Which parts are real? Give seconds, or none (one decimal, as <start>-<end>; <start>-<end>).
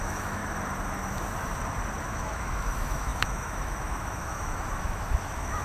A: 0.4-2.0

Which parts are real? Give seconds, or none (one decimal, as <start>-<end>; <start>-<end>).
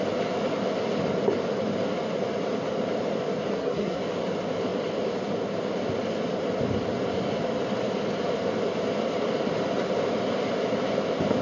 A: 0.0-3.5; 4.0-11.4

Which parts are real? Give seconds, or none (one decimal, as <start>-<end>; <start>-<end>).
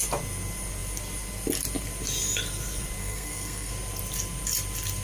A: 0.0-3.0; 3.7-5.0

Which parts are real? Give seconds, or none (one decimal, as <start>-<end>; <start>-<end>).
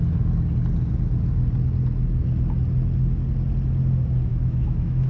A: 0.0-4.3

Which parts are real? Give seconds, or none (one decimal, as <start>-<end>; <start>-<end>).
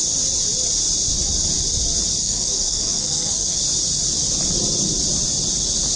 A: 0.0-2.2; 3.6-6.0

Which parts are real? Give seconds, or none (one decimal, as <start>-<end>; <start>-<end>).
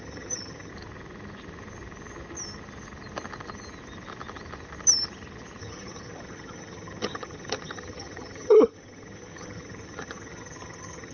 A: 0.7-5.6